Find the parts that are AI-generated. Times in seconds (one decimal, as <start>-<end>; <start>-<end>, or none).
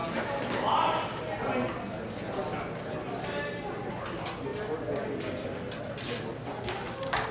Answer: none